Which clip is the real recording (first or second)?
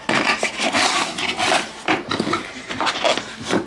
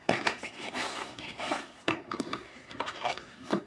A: first